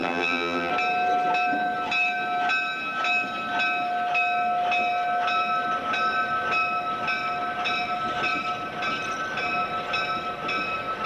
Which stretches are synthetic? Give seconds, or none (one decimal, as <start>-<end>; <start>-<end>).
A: 0.0-0.7